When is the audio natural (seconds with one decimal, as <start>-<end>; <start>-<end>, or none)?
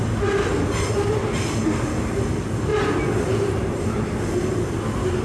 0.0-5.2